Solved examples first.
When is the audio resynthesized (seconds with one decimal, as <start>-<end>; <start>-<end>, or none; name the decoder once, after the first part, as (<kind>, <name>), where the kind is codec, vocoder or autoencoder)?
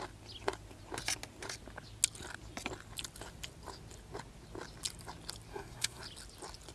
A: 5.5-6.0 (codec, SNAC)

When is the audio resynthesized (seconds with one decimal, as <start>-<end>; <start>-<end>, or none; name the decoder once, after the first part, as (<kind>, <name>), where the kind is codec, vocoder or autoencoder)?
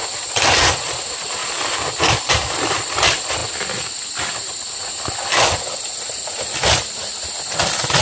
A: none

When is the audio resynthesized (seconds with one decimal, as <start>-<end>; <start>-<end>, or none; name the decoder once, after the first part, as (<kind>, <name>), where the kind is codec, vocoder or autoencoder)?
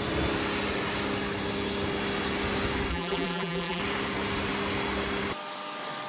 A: 2.9-3.8 (vocoder, BigVGAN v2)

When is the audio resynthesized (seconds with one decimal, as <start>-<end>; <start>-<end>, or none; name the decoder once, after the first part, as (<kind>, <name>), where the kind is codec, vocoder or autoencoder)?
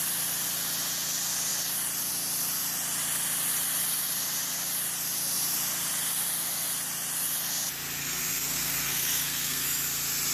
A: 8.0-9.8 (codec, SNAC)